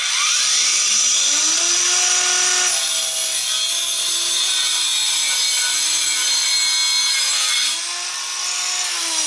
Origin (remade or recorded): recorded